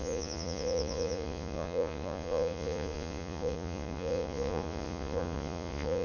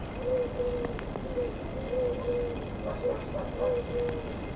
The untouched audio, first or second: second